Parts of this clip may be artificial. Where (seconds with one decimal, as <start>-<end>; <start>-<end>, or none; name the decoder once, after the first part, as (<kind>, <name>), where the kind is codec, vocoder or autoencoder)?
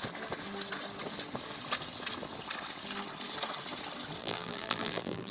4.2-5.3 (vocoder, BigVGAN v2)